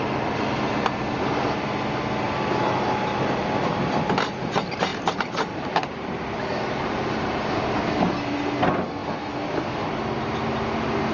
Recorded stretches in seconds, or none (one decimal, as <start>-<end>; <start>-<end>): 0.0-4.9; 7.8-11.1